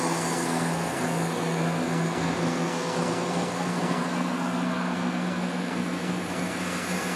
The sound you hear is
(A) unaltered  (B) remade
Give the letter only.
B